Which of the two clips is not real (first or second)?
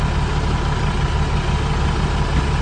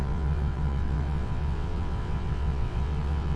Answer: second